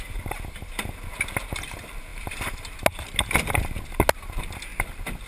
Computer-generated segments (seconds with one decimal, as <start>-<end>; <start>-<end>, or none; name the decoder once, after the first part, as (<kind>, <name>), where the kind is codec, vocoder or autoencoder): none